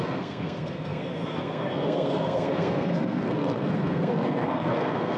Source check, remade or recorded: remade